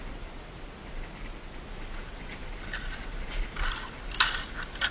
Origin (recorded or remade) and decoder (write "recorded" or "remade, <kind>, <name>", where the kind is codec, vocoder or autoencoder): recorded